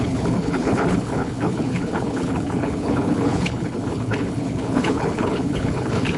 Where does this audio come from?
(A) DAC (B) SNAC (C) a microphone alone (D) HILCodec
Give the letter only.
D